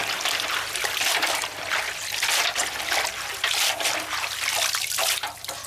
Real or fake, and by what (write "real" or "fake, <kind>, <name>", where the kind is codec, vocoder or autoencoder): real